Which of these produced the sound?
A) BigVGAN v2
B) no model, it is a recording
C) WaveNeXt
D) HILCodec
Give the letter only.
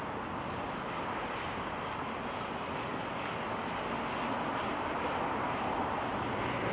B